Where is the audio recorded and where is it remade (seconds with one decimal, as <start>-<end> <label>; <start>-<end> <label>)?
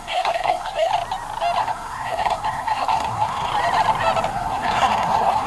0.0-0.9 remade; 0.9-1.6 recorded; 1.6-3.5 remade; 3.5-4.3 recorded; 4.3-5.5 remade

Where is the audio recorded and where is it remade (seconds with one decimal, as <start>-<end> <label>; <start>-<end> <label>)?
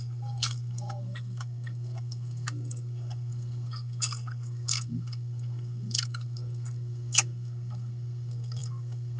0.0-9.2 remade